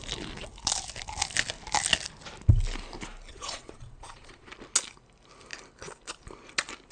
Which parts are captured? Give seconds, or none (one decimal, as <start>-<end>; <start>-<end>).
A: 0.0-3.3; 4.5-6.9